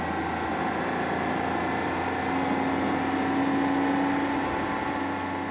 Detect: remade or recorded recorded